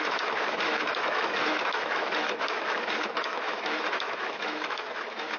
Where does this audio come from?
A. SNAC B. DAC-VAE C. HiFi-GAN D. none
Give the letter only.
B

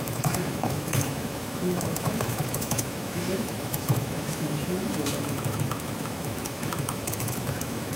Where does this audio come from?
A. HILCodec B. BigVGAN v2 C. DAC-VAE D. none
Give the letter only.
C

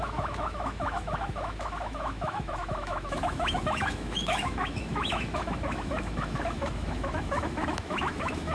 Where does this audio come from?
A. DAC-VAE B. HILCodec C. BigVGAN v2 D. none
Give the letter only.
A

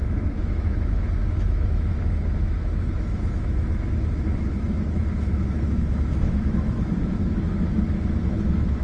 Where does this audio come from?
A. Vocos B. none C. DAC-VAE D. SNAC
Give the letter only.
C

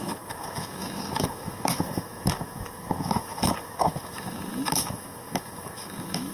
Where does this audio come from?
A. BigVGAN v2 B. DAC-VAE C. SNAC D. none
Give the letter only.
B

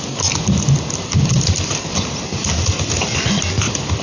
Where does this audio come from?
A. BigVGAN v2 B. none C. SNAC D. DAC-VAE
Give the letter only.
B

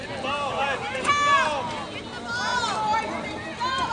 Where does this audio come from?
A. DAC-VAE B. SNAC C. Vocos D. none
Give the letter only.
D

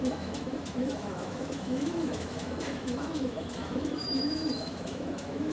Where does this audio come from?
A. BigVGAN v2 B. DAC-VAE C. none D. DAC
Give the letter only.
B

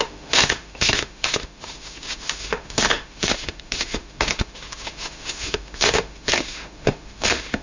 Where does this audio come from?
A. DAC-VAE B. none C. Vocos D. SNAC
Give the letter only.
A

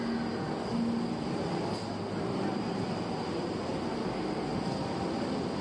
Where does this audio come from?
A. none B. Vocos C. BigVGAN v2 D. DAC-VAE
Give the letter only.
A